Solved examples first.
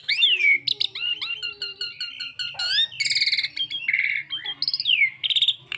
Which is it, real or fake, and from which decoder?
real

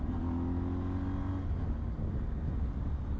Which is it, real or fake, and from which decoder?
real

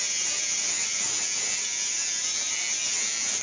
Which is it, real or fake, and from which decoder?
fake, vocoder, BigVGAN v2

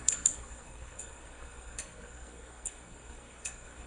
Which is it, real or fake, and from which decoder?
fake, codec, SNAC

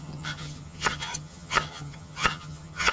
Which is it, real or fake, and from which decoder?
fake, vocoder, HiFi-GAN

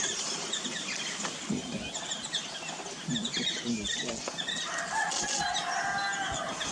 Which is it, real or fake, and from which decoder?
real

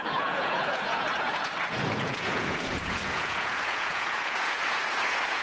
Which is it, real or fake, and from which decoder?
fake, vocoder, Vocos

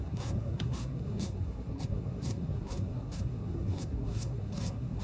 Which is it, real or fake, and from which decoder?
fake, codec, SNAC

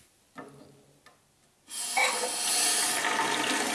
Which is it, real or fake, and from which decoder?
real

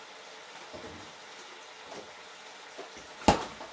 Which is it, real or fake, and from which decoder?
real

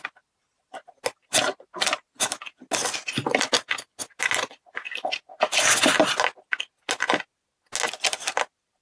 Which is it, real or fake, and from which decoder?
real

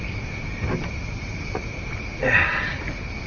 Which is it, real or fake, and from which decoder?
real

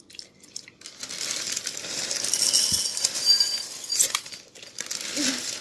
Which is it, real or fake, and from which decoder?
real